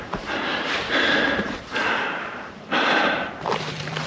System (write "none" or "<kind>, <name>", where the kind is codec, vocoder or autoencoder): vocoder, BigVGAN v2